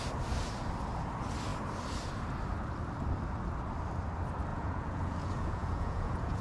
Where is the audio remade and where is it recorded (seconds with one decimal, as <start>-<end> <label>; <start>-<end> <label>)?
0.0-4.5 recorded; 4.5-6.4 remade